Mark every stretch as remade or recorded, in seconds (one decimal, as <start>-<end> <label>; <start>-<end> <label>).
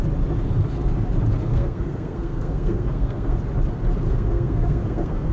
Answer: 0.0-1.4 recorded; 1.4-3.4 remade; 3.4-4.1 recorded; 4.1-5.3 remade